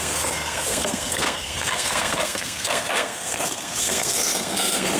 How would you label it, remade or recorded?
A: remade